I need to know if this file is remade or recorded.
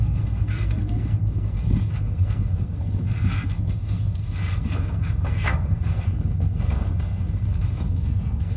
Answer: remade